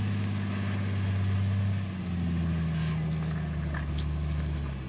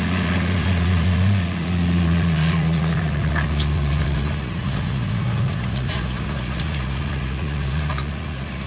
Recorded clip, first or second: first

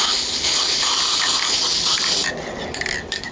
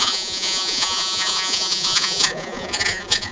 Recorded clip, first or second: first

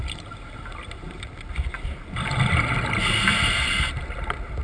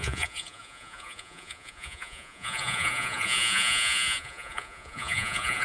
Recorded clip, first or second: first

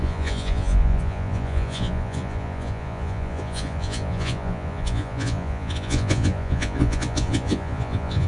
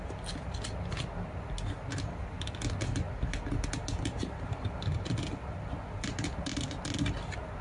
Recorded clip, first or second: second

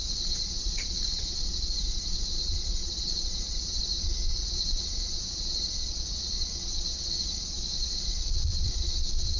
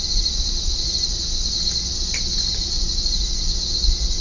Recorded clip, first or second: second